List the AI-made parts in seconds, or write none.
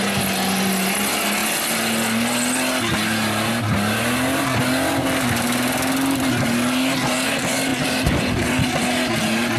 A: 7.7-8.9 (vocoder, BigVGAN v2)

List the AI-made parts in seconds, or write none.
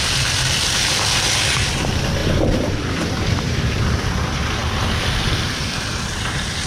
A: 0.0-4.6 (vocoder, BigVGAN v2); 5.2-6.7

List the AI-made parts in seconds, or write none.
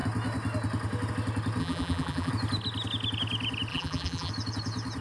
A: 1.6-2.3 (vocoder, BigVGAN v2); 3.7-4.3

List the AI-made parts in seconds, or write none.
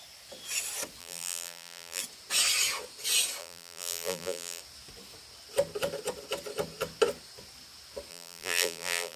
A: 1.0-2.0 (vocoder, BigVGAN v2); 3.4-4.6; 8.1-9.2